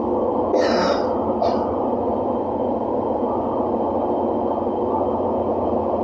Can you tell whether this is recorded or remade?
recorded